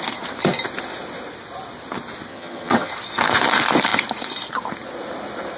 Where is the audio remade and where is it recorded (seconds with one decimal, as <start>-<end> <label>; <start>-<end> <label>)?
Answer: 0.0-2.3 recorded; 2.3-2.9 remade; 2.9-5.6 recorded